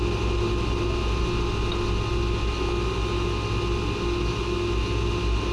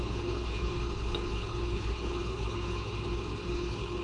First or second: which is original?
first